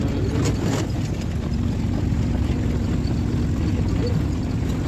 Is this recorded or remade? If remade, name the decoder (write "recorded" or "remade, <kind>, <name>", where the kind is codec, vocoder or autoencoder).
recorded